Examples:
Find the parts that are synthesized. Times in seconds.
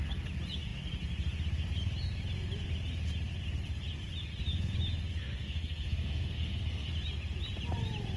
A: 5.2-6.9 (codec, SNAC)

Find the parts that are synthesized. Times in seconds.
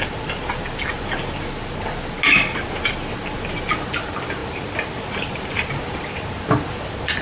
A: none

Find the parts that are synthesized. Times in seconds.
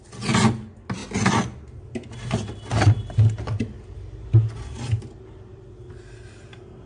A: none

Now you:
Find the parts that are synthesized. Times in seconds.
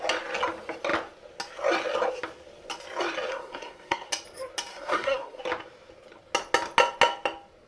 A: 3.3-4.1 (codec, SNAC); 4.7-5.4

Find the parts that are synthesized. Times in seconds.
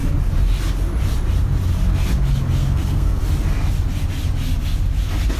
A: 2.6-3.2 (codec, SNAC)